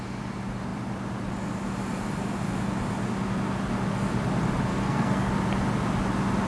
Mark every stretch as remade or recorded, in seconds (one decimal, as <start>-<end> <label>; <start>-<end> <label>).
0.0-4.7 recorded; 4.7-5.3 remade; 5.3-6.5 recorded